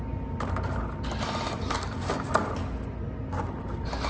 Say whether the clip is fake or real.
real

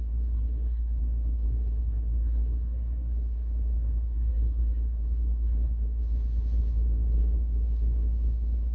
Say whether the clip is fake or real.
fake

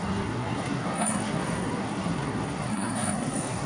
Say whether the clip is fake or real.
fake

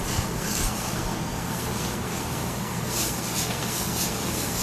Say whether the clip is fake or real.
fake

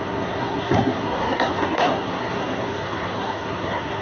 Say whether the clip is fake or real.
fake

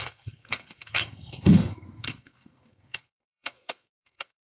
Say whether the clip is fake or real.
fake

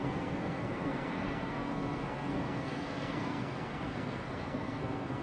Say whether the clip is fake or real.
fake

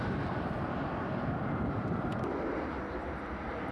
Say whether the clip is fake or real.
real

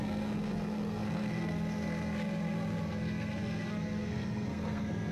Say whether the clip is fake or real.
fake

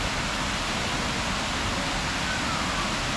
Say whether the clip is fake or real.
real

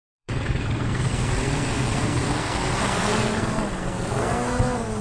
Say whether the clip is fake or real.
fake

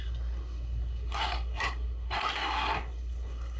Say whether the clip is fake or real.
fake